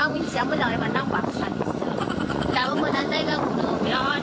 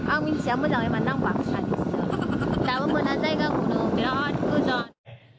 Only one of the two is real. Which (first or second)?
second